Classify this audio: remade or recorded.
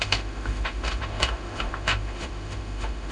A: remade